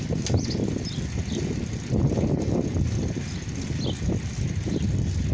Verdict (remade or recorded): recorded